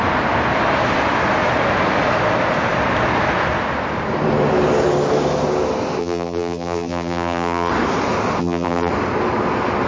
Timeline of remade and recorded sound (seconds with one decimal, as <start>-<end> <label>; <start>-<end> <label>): 0.0-6.0 recorded; 6.0-7.7 remade; 7.7-8.4 recorded; 8.4-8.9 remade; 8.9-9.9 recorded